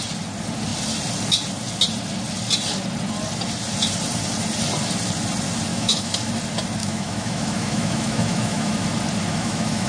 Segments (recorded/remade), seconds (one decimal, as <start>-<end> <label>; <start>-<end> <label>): 0.0-5.7 recorded; 5.7-6.3 remade; 6.3-6.8 recorded; 6.8-8.7 remade; 8.7-9.3 recorded; 9.3-9.9 remade